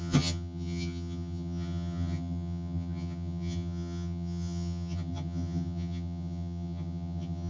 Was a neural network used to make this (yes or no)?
yes